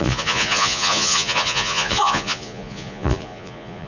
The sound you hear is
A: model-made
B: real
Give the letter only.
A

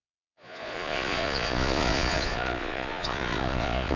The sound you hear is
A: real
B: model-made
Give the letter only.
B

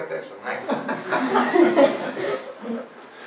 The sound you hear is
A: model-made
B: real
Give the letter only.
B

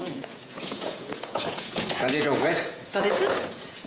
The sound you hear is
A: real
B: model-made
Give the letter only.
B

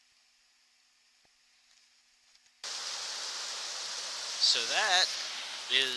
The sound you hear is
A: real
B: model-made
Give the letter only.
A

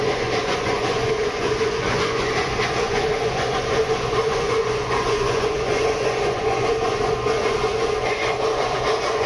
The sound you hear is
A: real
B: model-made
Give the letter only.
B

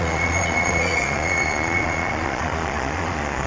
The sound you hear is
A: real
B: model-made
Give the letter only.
B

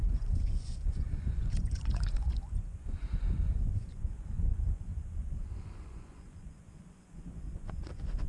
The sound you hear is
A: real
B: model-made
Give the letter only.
B